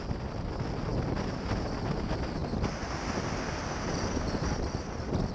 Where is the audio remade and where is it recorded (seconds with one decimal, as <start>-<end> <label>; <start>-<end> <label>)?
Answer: 0.0-5.3 recorded